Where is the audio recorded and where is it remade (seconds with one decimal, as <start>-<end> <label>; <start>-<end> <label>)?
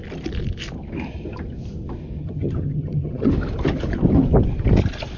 0.0-2.2 recorded; 2.2-3.3 remade; 3.3-5.2 recorded